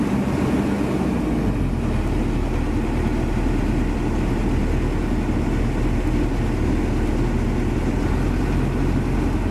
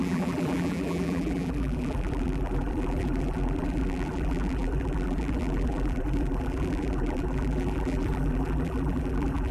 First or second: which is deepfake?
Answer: second